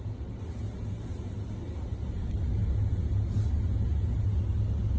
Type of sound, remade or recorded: recorded